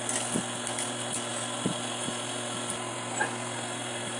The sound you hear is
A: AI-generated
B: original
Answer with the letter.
B